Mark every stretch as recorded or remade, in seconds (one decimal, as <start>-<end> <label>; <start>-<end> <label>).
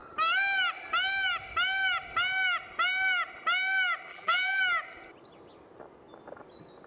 0.0-4.1 recorded; 4.1-4.6 remade; 4.6-6.9 recorded